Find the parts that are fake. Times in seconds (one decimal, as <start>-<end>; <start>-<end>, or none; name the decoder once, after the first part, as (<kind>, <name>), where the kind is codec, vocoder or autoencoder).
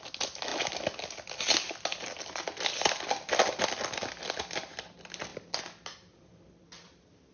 none